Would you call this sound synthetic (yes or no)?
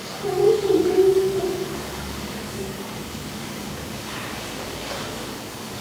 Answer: yes